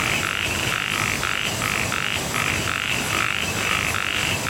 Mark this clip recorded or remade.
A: recorded